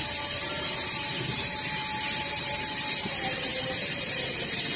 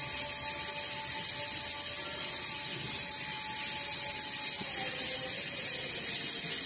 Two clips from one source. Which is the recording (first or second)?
second